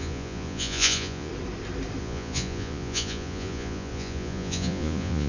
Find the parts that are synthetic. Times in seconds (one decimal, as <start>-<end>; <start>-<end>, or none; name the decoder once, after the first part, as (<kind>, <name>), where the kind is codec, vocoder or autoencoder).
0.0-1.3 (vocoder, Vocos); 2.0-5.3